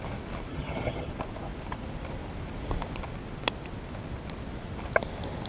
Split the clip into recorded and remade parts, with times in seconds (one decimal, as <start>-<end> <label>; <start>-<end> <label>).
0.0-0.5 recorded; 0.5-1.1 remade; 1.1-5.5 recorded